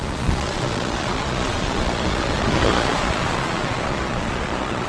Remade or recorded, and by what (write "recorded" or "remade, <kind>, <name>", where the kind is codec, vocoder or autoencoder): remade, vocoder, Vocos